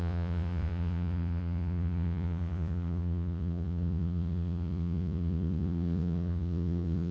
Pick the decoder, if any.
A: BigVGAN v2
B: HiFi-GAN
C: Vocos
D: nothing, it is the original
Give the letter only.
C